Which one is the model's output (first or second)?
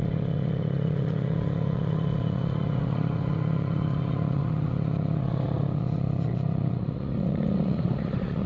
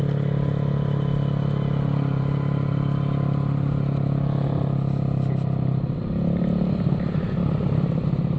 first